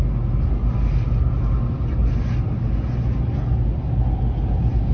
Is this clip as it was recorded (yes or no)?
yes